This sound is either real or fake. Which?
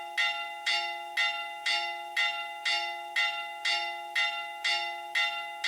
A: real